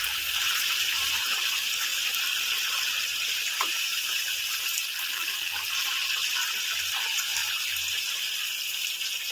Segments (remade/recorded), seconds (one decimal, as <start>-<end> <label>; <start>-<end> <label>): 0.0-1.9 remade; 1.9-2.6 recorded; 2.6-6.0 remade; 6.0-7.0 recorded; 7.0-9.3 remade